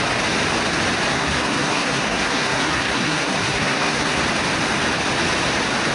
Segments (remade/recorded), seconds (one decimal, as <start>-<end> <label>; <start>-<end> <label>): 0.0-1.1 recorded; 1.1-4.2 remade; 4.2-5.9 recorded